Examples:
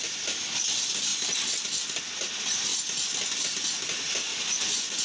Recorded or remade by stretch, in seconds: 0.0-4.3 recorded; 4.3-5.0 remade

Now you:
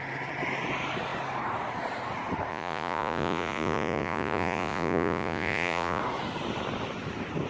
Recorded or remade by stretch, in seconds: 0.0-2.5 recorded; 2.5-6.0 remade; 6.0-7.5 recorded